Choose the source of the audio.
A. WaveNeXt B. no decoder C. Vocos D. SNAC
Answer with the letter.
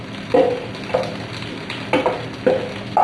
B